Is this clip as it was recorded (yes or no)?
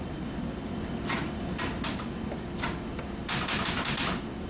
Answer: no